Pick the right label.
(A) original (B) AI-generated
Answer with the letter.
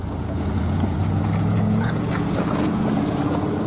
B